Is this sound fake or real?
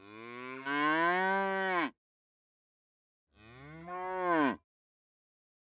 real